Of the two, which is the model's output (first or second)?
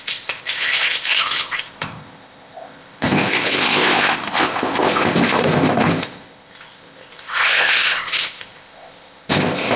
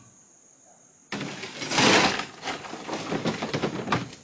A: first